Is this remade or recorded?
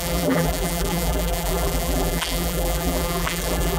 remade